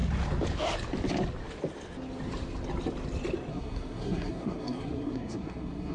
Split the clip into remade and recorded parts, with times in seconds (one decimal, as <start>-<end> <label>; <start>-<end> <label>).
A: 0.0-3.5 recorded; 3.5-5.9 remade